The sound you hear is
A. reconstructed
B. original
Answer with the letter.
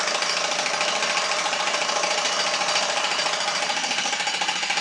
B